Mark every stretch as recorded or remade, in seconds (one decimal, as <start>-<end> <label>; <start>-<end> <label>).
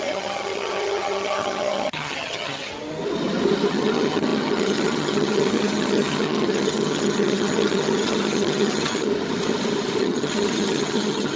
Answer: 0.0-2.7 remade; 2.7-3.7 recorded; 3.7-9.1 remade; 9.1-10.0 recorded; 10.0-11.4 remade